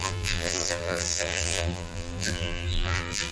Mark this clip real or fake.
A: fake